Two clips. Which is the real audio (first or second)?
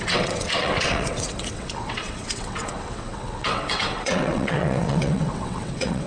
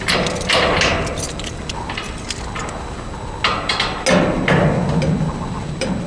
second